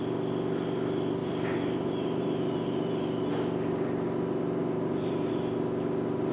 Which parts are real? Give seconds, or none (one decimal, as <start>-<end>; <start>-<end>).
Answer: 0.0-1.2; 3.3-4.6; 5.3-6.3